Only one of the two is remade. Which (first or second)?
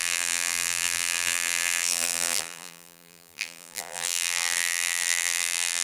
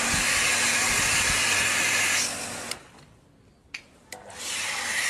first